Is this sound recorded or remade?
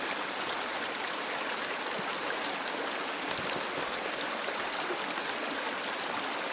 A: recorded